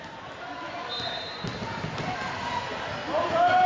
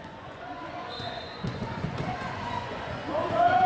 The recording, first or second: first